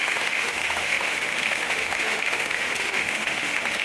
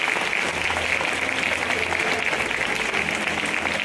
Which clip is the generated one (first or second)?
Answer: first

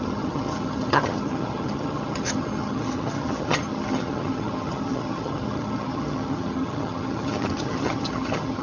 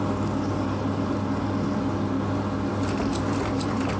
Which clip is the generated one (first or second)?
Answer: first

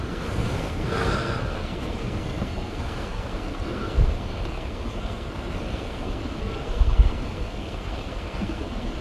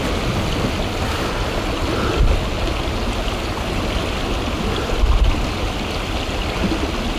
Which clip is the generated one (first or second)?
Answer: first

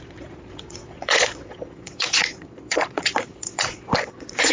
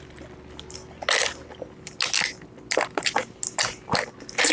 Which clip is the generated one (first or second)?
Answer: first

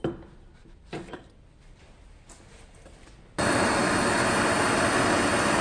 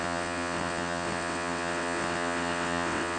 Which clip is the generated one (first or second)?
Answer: second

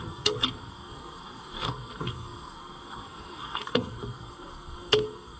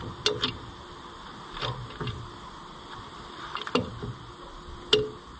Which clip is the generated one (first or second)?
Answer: first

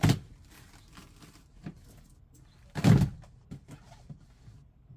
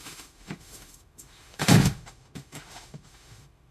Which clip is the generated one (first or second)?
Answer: second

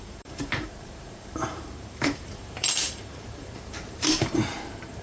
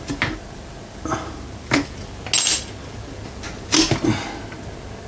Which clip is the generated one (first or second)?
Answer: first